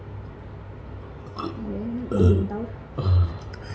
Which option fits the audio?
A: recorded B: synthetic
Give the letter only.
A